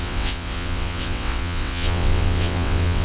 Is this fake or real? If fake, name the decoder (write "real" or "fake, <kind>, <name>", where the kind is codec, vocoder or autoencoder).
fake, vocoder, WaveNeXt